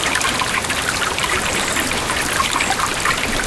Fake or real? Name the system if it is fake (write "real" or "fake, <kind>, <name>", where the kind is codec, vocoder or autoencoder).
real